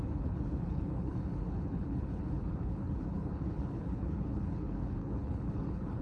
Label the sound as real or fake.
fake